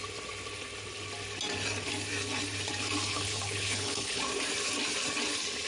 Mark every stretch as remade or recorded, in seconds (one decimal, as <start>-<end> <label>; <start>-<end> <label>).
0.0-3.1 recorded; 3.1-4.2 remade; 4.2-5.7 recorded